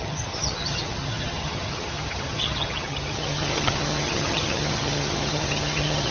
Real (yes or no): no